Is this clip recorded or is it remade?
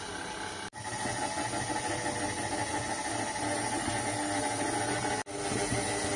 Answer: recorded